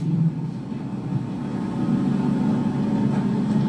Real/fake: real